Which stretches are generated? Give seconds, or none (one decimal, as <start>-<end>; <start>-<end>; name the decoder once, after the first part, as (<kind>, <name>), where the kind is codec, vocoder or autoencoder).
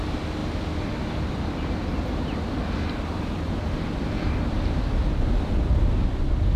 none